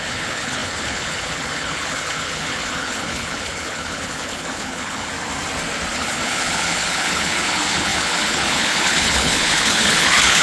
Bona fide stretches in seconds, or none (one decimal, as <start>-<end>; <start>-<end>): 5.1-5.9